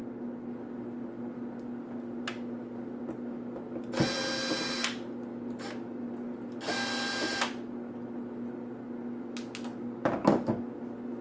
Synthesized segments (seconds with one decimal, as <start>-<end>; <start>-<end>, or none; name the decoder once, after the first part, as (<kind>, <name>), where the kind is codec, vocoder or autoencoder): none